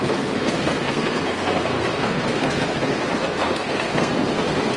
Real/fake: fake